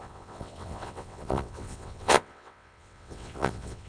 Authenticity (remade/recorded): remade